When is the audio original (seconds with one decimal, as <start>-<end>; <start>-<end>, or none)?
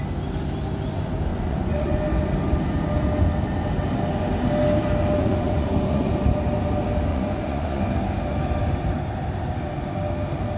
0.0-1.3; 2.0-5.2; 6.1-7.1; 7.8-10.6